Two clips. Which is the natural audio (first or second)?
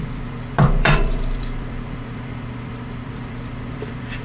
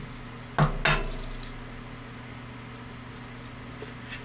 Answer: second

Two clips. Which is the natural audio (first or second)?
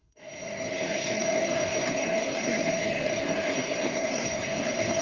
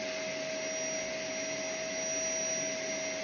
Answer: second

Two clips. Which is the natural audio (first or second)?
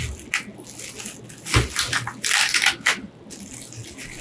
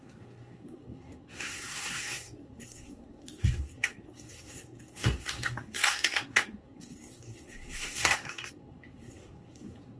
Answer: first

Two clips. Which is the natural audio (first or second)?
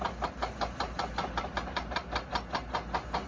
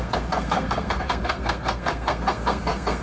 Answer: first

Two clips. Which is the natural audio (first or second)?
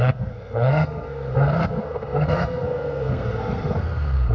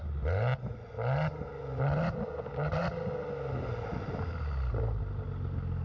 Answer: second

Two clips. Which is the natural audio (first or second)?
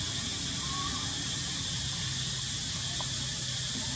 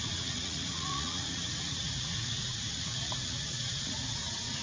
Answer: first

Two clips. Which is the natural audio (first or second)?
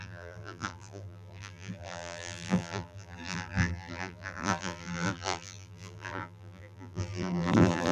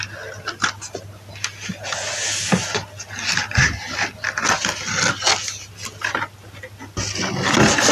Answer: second